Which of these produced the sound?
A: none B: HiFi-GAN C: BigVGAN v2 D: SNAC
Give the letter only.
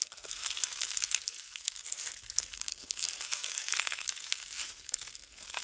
D